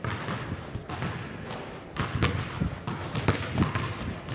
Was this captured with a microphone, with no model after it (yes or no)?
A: yes